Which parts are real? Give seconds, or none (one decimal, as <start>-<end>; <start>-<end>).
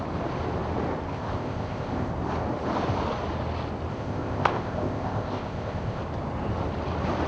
0.0-1.1; 2.1-3.9; 6.0-7.3